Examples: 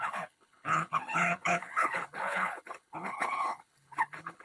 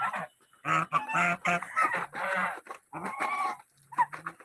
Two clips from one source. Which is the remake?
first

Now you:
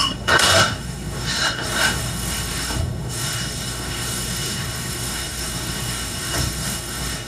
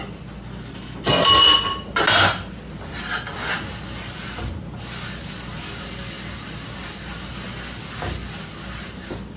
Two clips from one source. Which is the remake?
first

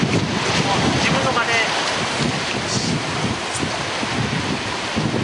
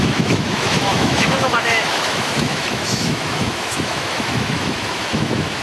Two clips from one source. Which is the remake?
second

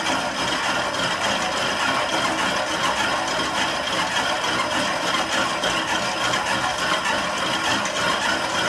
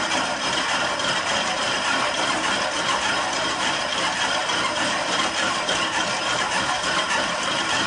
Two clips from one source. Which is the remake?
second